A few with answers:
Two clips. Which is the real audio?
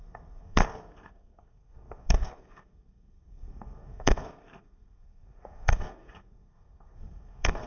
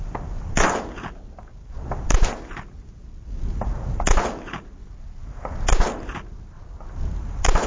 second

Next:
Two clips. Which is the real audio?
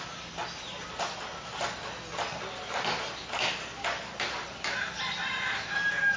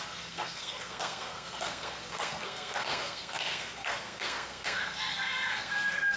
first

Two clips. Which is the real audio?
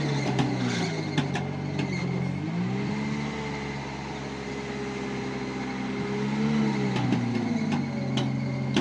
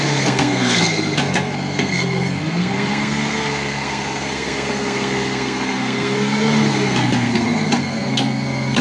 first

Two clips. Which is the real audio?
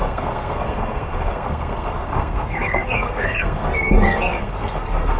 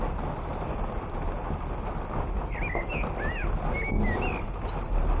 second